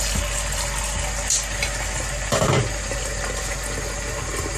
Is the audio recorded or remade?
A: recorded